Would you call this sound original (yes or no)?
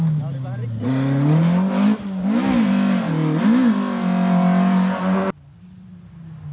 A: yes